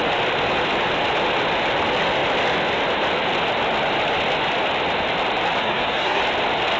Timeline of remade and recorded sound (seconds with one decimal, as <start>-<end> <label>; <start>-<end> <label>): 0.0-5.6 recorded; 5.6-6.2 remade; 6.2-6.8 recorded